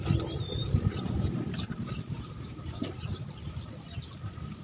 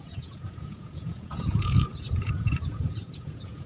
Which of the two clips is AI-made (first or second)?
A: second